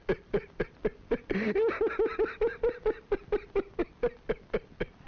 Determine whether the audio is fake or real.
real